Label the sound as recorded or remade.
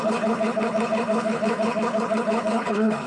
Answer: remade